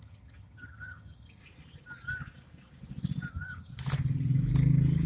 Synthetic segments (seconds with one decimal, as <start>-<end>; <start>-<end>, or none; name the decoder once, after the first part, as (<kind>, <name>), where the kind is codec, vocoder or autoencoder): 0.0-1.4 (vocoder, HiFi-GAN); 3.3-3.7